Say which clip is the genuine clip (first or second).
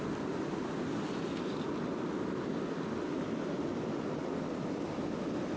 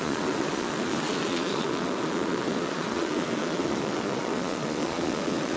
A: first